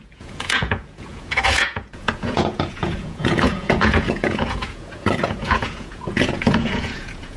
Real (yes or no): no